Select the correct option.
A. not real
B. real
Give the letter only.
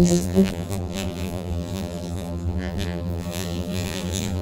A